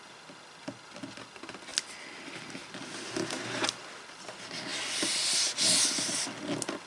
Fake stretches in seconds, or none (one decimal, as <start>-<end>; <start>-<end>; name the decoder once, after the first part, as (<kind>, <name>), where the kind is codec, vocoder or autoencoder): none